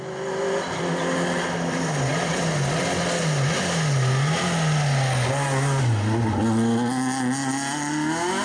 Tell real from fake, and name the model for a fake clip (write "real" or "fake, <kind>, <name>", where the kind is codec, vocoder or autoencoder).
real